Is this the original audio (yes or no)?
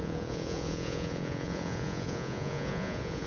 no